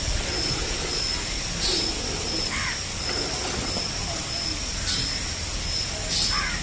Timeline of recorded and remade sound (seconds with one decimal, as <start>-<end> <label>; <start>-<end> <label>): 0.0-6.6 recorded